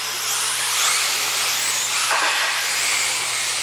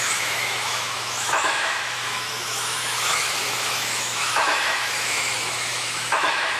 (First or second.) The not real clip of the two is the second